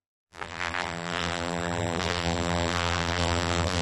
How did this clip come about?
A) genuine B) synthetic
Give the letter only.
B